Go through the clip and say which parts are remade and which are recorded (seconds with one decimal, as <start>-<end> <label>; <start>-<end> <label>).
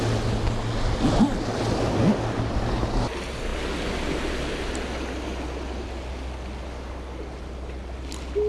0.0-8.5 recorded